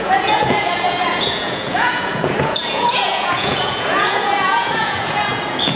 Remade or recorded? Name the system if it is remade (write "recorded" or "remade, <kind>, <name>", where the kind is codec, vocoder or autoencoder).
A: remade, vocoder, Vocos